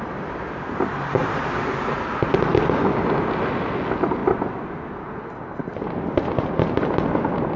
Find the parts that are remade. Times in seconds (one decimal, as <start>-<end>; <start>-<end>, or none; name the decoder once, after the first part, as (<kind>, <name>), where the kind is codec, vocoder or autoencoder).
none